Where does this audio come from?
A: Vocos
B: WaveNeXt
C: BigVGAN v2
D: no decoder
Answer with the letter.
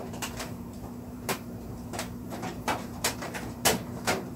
C